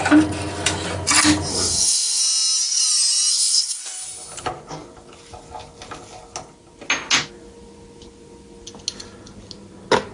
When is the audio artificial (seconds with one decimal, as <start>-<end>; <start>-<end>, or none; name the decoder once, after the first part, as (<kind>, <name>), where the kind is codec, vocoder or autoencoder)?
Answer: 1.5-2.2 (codec, SNAC); 3.3-3.8